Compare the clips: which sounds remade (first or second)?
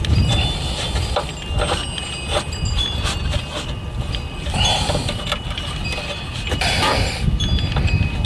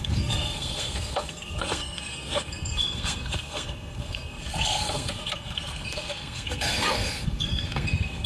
second